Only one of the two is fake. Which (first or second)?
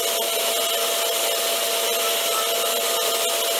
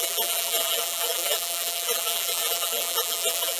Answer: second